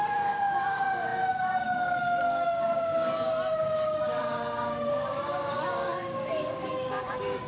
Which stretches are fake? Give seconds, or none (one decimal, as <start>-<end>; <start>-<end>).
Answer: 0.0-7.5